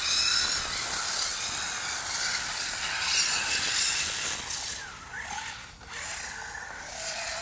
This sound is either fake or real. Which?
real